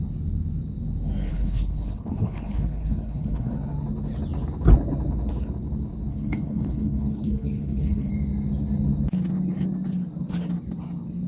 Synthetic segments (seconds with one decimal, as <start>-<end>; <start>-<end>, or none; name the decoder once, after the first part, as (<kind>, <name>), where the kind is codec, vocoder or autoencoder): 1.3-3.5 (codec, HILCodec); 6.1-8.1